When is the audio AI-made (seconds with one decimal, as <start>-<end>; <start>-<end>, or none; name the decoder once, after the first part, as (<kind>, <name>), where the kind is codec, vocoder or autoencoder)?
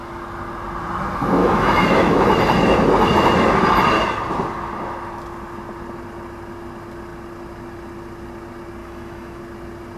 1.4-2.4 (autoencoder, DAC-VAE); 8.8-9.4